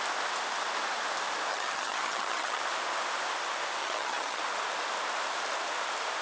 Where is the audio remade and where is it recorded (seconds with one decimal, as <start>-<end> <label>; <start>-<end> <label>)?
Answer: 0.0-1.5 recorded; 1.5-2.6 remade; 2.6-3.8 recorded; 3.8-4.4 remade; 4.4-6.2 recorded

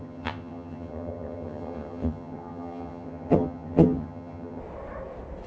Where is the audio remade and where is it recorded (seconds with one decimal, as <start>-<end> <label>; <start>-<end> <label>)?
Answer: 0.0-4.6 remade; 4.6-5.5 recorded

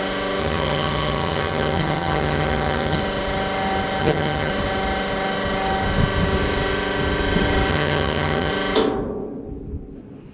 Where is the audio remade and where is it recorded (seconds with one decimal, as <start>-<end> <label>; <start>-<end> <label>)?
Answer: 0.0-0.4 recorded; 0.4-3.0 remade; 3.0-4.0 recorded; 4.0-4.5 remade; 4.5-7.7 recorded; 7.7-8.5 remade; 8.5-10.3 recorded

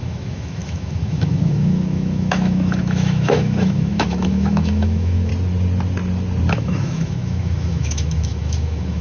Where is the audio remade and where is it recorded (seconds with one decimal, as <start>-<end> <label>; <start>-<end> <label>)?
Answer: 0.0-5.3 remade; 5.3-6.5 recorded; 6.5-9.0 remade

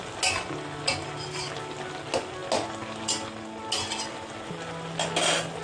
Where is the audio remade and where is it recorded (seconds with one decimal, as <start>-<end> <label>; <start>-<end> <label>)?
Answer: 0.0-5.6 recorded